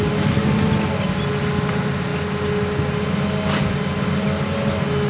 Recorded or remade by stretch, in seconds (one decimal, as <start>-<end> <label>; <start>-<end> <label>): 0.0-5.1 recorded